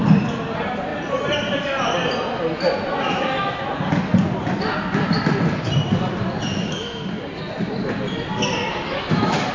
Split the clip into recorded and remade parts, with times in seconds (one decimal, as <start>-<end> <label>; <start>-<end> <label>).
0.0-2.9 recorded; 2.9-3.7 remade; 3.7-6.5 recorded; 6.5-7.1 remade; 7.1-8.7 recorded; 8.7-9.5 remade